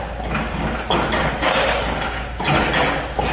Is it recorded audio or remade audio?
recorded